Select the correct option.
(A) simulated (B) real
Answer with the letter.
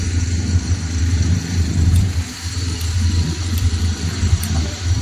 A